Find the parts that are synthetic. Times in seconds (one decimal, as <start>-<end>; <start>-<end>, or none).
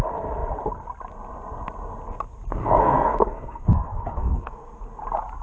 2.6-4.8